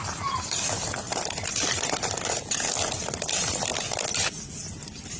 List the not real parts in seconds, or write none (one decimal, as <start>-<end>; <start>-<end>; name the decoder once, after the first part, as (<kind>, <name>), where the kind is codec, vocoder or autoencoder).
none